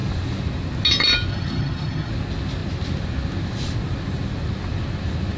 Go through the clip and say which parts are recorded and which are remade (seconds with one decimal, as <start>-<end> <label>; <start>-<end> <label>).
0.0-1.3 recorded; 1.3-2.1 remade; 2.1-5.4 recorded